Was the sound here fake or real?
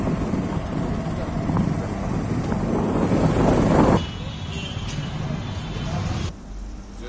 real